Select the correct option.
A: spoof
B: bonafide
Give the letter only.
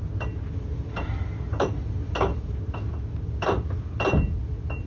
B